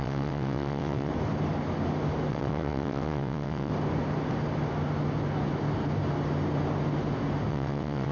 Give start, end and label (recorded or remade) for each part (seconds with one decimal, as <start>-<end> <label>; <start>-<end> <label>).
0.0-1.1 remade; 1.1-2.3 recorded; 2.3-3.7 remade; 3.7-7.5 recorded; 7.5-8.1 remade